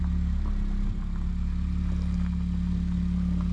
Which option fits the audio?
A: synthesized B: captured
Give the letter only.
B